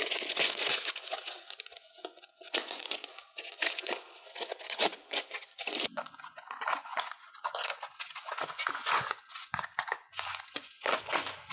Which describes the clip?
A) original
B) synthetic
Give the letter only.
B